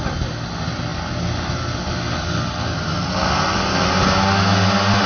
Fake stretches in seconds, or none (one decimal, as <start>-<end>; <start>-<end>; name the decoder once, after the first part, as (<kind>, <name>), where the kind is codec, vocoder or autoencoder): none